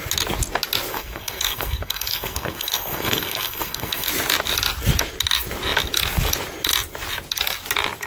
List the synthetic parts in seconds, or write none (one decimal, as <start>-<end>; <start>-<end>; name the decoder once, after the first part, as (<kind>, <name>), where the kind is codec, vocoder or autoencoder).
0.9-4.1 (codec, SNAC)